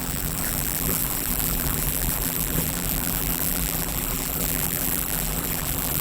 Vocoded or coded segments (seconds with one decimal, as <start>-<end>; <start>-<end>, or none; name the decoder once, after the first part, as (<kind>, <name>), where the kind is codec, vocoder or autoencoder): 0.0-6.0 (vocoder, BigVGAN v2)